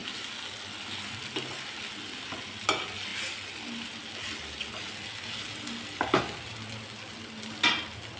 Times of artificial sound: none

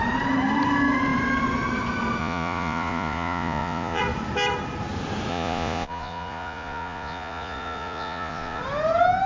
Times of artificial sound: 2.2-4.0 (vocoder, Vocos); 5.3-8.6

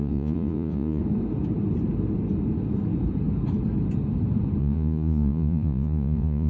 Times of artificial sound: 0.0-1.0 (vocoder, Vocos); 4.6-6.5

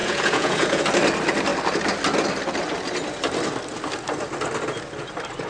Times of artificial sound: 0.0-0.8 (vocoder, Vocos)